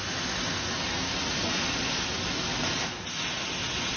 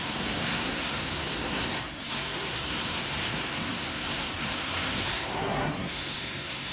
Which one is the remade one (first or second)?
second